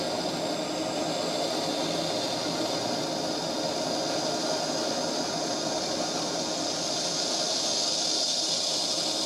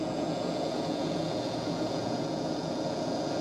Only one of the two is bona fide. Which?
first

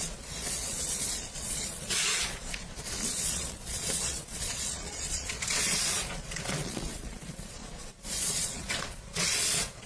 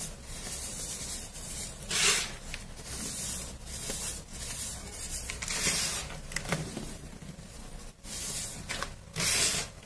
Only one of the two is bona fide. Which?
second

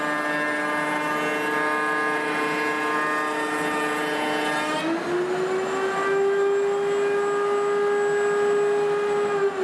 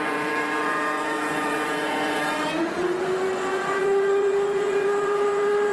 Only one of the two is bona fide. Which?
first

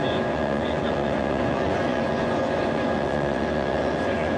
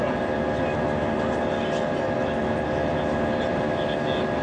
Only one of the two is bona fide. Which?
second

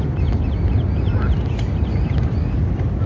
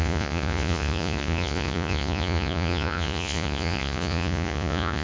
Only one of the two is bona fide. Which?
first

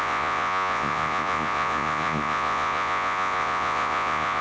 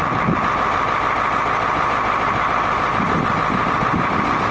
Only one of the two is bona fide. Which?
second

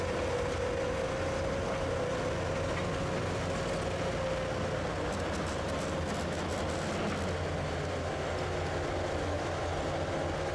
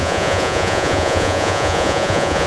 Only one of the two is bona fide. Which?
first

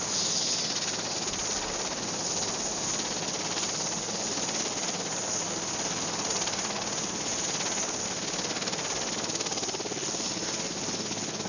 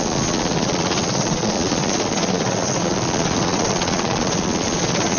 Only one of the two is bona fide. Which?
first